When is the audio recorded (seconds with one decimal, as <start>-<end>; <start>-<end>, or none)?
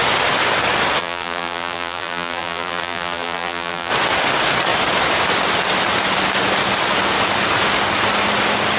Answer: 0.0-1.0; 3.9-8.8